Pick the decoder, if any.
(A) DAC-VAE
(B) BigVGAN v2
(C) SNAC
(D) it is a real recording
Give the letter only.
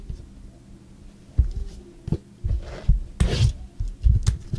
D